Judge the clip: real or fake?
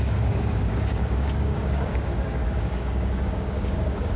fake